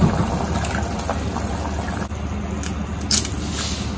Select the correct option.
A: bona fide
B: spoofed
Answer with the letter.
A